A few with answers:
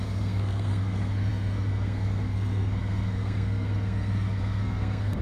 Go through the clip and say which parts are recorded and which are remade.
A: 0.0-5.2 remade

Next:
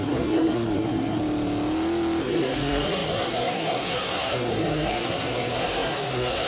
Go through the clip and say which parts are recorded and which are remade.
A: 0.0-1.2 remade; 1.2-2.2 recorded; 2.2-6.5 remade

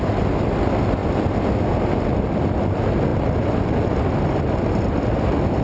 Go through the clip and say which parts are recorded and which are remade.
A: 0.0-1.0 remade; 1.0-1.9 recorded; 1.9-5.6 remade

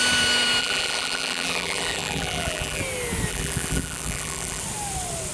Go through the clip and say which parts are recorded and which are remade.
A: 0.0-0.6 recorded; 0.6-2.8 remade; 2.8-3.3 recorded; 3.3-4.6 remade; 4.6-5.3 recorded

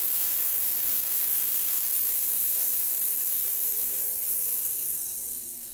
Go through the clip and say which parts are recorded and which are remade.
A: 0.0-5.7 remade